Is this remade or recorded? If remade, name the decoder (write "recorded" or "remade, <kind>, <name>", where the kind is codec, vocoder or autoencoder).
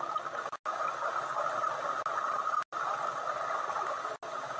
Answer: recorded